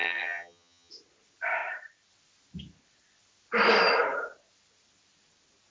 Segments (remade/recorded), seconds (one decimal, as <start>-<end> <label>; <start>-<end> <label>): 0.0-0.9 remade; 0.9-5.7 recorded